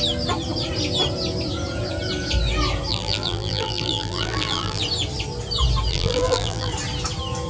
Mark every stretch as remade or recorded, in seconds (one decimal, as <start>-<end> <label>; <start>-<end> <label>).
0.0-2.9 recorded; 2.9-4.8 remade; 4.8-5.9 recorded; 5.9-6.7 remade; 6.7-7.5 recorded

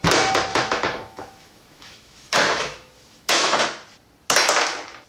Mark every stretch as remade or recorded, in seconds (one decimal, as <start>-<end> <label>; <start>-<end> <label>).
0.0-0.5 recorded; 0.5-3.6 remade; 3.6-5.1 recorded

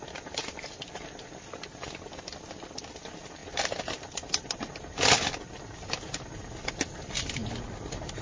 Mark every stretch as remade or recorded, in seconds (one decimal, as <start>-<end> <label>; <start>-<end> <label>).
0.0-8.2 recorded

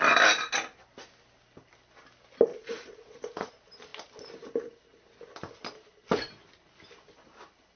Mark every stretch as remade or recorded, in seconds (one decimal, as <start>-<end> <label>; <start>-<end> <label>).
0.0-2.5 recorded; 2.5-3.5 remade; 3.5-7.8 recorded